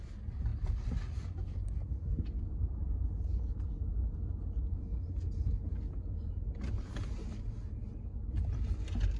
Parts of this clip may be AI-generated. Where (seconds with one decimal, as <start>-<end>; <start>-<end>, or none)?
none